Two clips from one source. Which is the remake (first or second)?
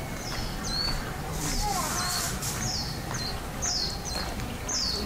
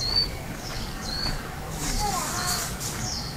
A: second